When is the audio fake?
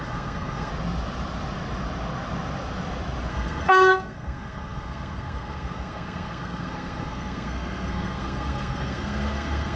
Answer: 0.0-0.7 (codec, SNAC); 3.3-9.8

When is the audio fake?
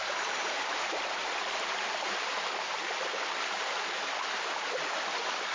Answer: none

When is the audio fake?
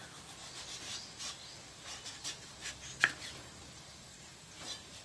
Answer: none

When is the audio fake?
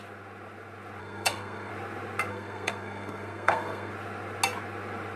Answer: 1.0-1.7 (codec, SNAC); 2.3-3.9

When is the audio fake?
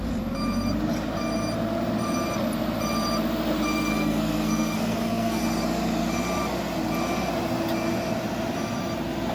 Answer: 3.9-5.4 (codec, SNAC)